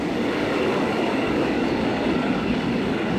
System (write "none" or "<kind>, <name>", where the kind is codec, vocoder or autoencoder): codec, DAC